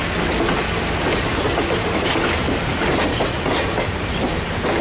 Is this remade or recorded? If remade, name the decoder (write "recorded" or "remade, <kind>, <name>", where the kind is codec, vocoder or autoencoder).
recorded